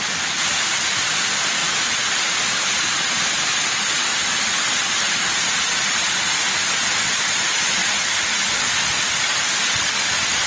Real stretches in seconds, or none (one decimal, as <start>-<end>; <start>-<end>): 7.8-9.1